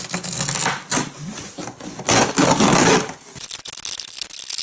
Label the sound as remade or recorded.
recorded